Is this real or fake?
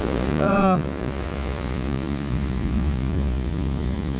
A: fake